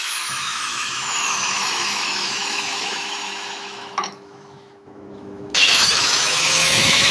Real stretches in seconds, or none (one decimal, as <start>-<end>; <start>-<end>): none